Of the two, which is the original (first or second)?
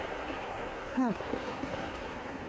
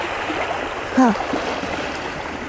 second